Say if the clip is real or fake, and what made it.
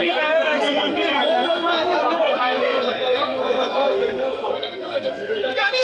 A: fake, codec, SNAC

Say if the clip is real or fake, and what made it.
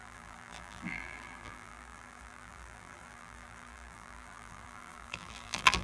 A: fake, vocoder, BigVGAN v2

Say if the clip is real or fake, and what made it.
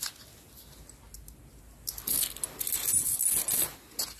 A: real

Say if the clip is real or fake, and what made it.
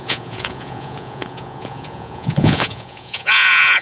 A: fake, vocoder, Vocos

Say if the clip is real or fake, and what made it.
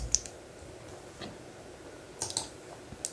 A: real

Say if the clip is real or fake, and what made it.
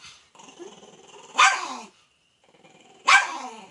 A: fake, vocoder, BigVGAN v2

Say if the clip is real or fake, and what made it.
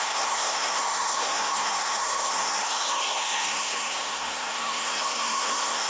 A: fake, codec, SNAC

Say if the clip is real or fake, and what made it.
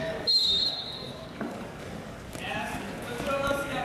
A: fake, codec, DAC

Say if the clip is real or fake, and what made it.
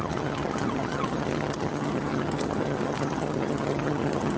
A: fake, vocoder, HiFi-GAN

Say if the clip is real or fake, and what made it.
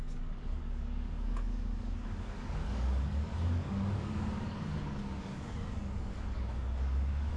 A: fake, codec, DAC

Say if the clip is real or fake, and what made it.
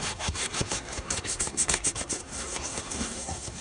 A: fake, codec, SNAC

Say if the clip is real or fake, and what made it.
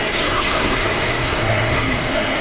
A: fake, codec, SNAC